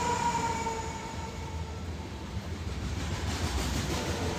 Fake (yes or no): yes